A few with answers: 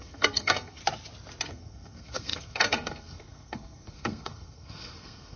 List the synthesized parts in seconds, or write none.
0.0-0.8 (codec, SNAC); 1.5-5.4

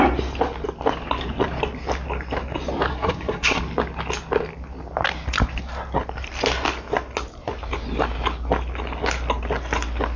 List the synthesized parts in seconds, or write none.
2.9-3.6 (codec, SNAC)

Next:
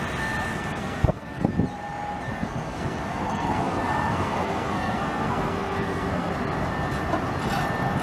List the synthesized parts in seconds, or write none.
0.5-1.5 (codec, SNAC); 2.3-6.3

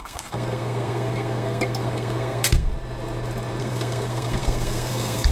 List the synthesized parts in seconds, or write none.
0.0-2.7 (codec, SNAC); 3.6-5.3